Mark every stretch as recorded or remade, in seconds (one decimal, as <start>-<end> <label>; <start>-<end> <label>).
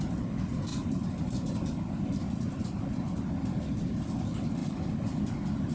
0.0-4.6 recorded; 4.6-5.2 remade; 5.2-5.7 recorded